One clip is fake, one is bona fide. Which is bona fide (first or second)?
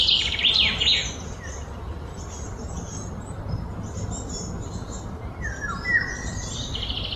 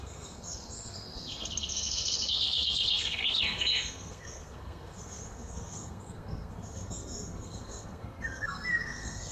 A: first